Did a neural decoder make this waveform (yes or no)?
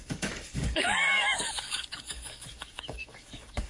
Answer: yes